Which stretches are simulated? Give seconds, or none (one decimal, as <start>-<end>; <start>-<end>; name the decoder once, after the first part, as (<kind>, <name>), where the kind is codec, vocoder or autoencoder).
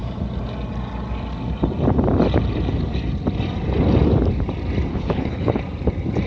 4.9-5.6 (codec, HILCodec)